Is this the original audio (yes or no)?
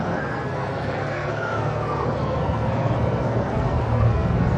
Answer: no